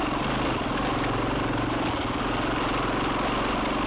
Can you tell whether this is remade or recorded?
recorded